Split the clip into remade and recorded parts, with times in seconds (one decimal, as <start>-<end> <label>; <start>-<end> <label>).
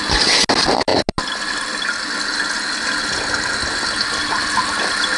0.0-5.2 recorded